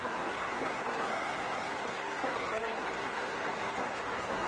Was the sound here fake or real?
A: fake